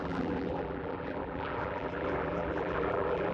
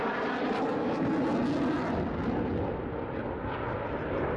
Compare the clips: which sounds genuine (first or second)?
second